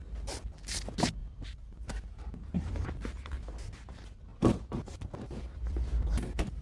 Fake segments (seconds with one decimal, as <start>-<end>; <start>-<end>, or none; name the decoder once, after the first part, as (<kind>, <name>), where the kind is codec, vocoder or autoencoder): 1.2-2.9 (vocoder, BigVGAN v2); 4.3-4.9